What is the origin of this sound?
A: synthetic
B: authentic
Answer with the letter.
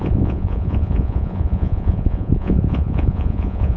A